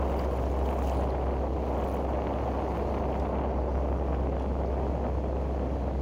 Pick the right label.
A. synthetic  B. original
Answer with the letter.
B